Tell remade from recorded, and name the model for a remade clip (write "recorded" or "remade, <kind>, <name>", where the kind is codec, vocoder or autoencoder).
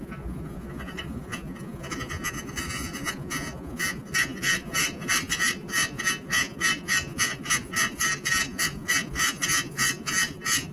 remade, vocoder, Vocos